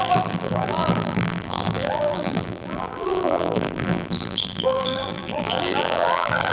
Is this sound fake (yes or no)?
yes